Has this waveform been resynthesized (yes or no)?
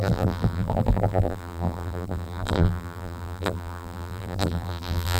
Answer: yes